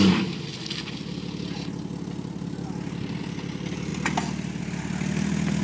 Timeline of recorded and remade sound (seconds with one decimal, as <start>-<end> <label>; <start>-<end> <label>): 0.0-5.6 recorded